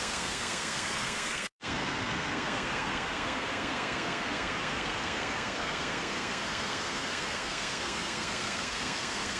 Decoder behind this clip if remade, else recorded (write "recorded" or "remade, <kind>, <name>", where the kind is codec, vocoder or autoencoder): remade, codec, SNAC